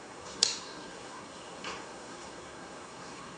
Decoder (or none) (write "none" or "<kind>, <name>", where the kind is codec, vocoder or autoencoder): codec, SNAC